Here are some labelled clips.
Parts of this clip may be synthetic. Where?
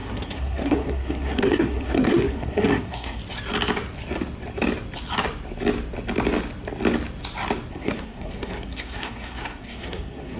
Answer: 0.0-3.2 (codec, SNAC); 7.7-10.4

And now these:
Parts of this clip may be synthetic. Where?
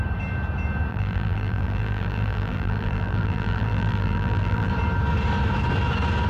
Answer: 0.9-4.7 (vocoder, BigVGAN v2)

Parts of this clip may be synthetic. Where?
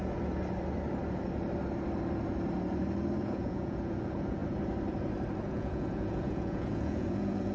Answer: 3.2-4.4 (vocoder, Vocos); 5.4-7.5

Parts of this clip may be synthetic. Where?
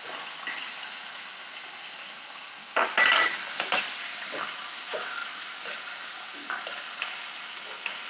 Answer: none